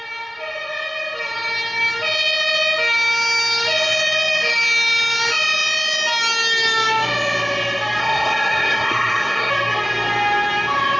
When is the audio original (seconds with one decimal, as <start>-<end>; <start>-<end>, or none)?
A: 0.0-8.0; 9.5-11.0